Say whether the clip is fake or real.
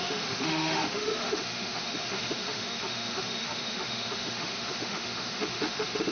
fake